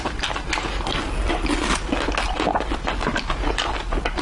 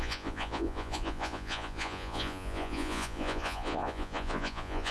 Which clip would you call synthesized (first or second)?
second